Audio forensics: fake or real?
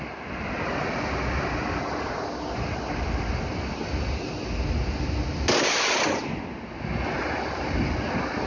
real